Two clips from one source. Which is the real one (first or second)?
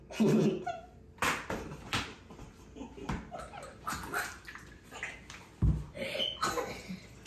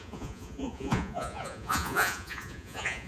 first